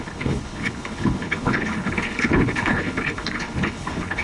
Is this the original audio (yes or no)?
no